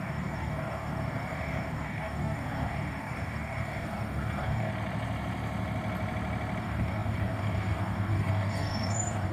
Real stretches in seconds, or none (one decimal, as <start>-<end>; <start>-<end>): 4.7-6.6